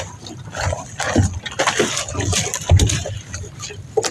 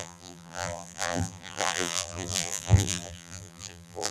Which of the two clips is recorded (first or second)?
first